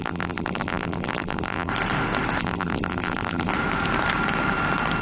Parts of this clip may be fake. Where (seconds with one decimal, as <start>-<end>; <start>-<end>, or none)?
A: 0.0-1.7; 2.4-3.5